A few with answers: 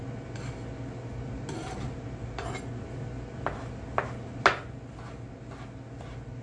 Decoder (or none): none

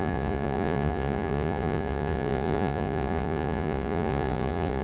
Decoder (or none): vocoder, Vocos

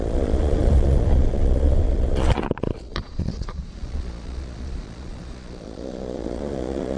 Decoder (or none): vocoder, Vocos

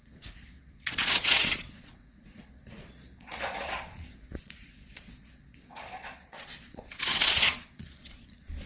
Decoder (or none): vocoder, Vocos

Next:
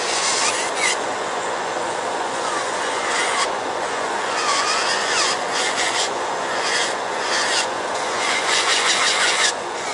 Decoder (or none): vocoder, Vocos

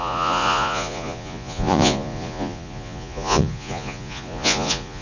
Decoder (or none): vocoder, Vocos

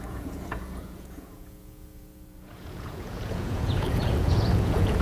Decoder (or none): vocoder, Vocos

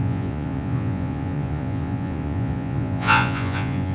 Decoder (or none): vocoder, Vocos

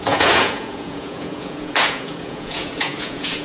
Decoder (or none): vocoder, Vocos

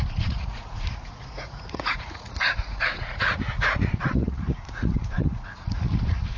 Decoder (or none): vocoder, Vocos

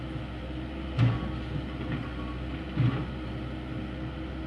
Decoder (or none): none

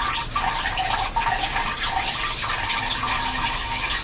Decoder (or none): none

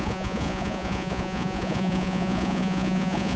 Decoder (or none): vocoder, Vocos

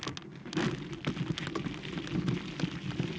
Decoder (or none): none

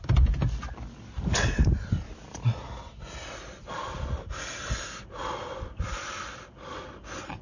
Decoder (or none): none